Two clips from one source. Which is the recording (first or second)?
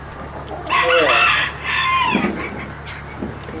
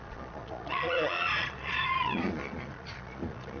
first